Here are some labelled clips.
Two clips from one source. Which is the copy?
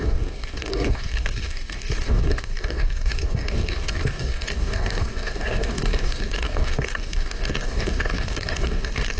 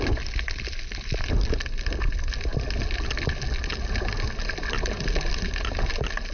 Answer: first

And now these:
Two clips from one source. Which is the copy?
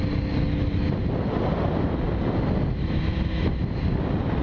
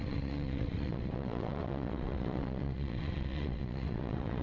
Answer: second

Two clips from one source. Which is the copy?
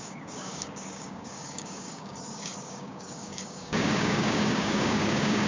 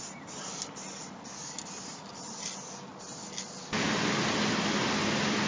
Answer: first